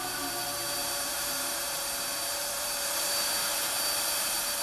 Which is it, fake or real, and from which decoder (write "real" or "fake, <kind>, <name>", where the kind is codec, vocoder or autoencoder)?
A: fake, vocoder, BigVGAN v2